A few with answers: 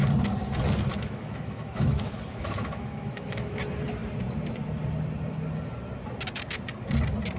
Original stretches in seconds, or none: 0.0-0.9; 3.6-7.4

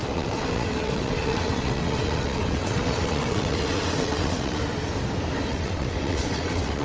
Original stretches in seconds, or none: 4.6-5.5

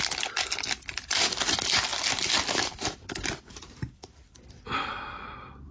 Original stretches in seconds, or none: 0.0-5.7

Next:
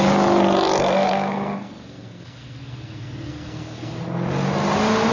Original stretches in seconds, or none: 0.0-0.8; 3.9-5.1

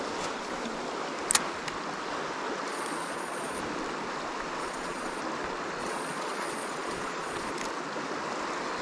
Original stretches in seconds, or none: 0.0-2.7; 3.6-4.6; 5.2-5.8; 7.5-8.8